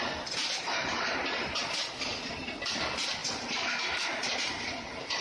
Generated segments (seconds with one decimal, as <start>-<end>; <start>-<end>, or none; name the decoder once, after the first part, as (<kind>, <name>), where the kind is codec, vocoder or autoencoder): 0.0-5.2 (vocoder, BigVGAN v2)